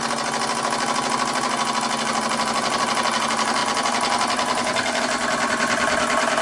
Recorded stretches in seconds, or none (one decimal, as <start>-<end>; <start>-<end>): 0.0-6.4